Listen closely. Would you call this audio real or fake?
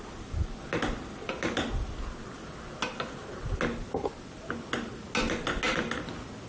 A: real